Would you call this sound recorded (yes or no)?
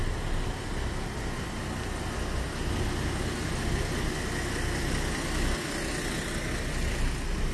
yes